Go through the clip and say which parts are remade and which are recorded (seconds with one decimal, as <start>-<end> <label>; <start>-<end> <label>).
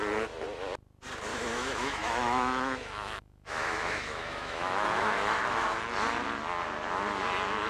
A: 0.0-1.3 recorded; 1.3-5.8 remade; 5.8-7.7 recorded